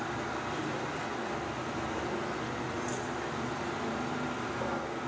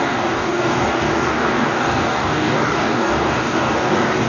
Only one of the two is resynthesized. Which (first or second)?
second